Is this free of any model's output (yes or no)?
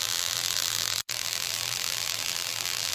no